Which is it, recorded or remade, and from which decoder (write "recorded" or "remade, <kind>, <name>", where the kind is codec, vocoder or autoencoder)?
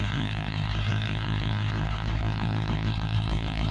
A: remade, codec, SNAC